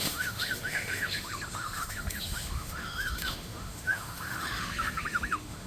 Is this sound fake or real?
fake